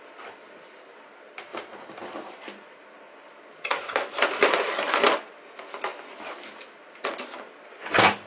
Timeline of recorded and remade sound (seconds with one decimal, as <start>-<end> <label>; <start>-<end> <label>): 0.0-8.3 recorded